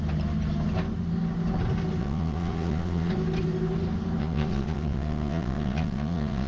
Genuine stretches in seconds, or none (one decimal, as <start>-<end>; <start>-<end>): 0.0-2.0; 3.1-4.2